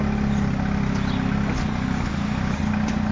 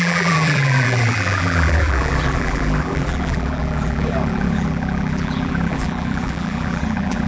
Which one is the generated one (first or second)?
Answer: second